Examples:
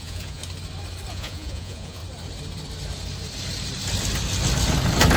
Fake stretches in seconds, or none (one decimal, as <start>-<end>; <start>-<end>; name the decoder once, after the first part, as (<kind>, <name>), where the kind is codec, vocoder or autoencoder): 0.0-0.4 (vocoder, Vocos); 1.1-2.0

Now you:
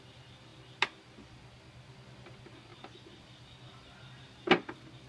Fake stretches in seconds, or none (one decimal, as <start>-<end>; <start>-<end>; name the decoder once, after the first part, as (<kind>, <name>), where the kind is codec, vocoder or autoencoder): none

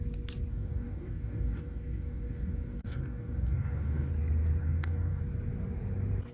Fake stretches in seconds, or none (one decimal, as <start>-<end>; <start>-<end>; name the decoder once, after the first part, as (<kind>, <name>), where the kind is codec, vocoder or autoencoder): 0.5-4.1 (codec, DAC); 4.6-5.2